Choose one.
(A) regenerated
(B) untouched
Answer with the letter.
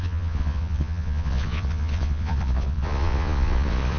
A